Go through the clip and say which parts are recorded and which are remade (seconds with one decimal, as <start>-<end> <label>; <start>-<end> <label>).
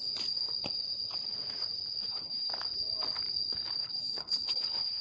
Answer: 0.0-2.0 recorded; 2.0-2.5 remade; 2.5-3.8 recorded; 3.8-5.0 remade